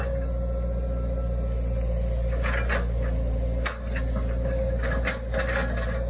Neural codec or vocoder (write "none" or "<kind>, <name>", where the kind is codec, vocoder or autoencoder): none